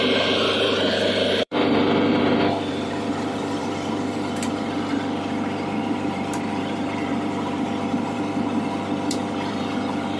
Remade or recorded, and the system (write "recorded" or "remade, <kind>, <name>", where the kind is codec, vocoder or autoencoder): remade, vocoder, BigVGAN v2